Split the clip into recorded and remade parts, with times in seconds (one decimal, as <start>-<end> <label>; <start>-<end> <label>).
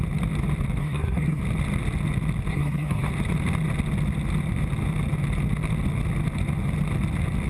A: 0.0-0.8 recorded; 0.8-1.4 remade; 1.4-2.5 recorded; 2.5-3.1 remade; 3.1-7.5 recorded